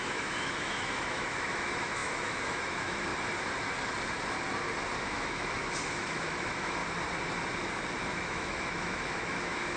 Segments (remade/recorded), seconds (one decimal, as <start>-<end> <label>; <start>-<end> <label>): 0.0-3.1 remade; 3.1-5.0 recorded; 5.0-6.8 remade; 6.8-8.1 recorded; 8.1-9.8 remade